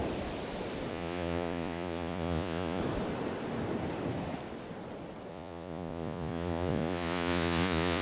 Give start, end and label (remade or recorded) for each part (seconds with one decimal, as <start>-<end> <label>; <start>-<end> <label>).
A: 0.0-0.9 recorded; 0.9-2.8 remade; 2.8-5.3 recorded; 5.3-8.0 remade